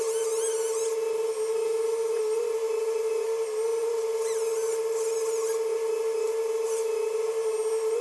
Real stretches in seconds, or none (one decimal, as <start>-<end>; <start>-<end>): 0.0-8.0